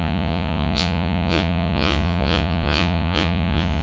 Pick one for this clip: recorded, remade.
remade